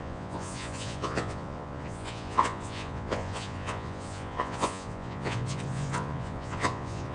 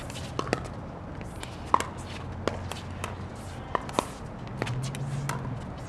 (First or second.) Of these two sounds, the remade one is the first